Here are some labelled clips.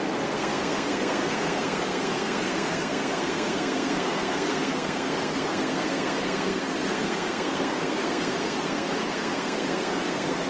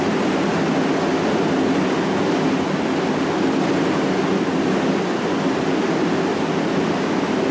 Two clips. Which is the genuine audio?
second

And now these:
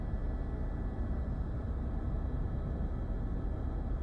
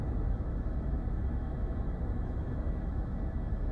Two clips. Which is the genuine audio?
first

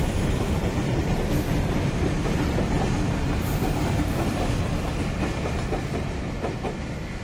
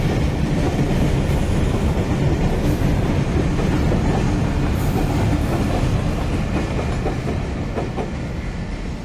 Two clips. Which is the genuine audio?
second